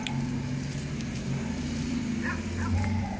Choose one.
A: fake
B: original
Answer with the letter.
B